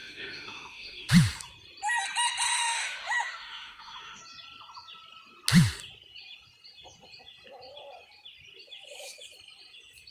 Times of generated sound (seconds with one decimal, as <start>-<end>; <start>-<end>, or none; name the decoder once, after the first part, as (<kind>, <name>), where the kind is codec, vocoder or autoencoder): 0.0-1.1 (autoencoder, DAC-VAE); 2.5-4.2